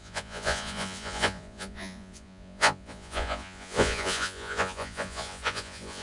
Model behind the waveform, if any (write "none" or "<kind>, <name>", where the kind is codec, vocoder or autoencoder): vocoder, Vocos